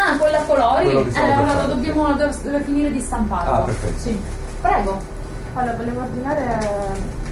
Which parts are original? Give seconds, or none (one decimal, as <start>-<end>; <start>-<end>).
0.0-7.3